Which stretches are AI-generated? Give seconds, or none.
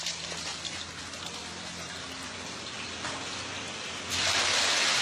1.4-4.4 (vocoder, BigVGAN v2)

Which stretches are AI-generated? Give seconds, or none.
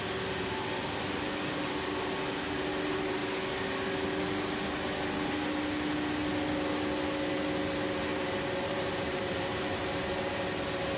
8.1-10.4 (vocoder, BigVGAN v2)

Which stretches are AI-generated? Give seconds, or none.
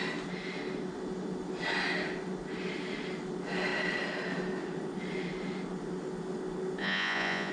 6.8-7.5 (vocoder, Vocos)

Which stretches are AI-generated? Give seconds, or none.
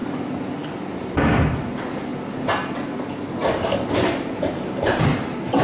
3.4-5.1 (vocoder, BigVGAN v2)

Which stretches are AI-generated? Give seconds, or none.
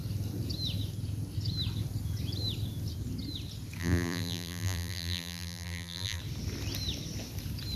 3.8-6.2 (vocoder, BigVGAN v2)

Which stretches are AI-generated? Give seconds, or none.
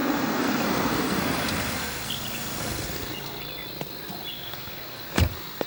0.0-3.4 (codec, SNAC); 4.3-5.7